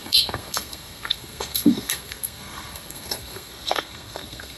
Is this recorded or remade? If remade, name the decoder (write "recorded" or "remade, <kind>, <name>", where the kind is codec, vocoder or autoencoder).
remade, codec, SNAC